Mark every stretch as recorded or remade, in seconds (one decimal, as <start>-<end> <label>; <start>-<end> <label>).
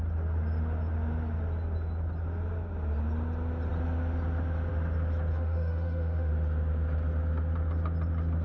0.0-5.3 recorded; 5.3-6.3 remade; 6.3-8.4 recorded